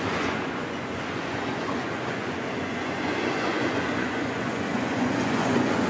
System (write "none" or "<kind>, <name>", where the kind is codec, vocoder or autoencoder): vocoder, Vocos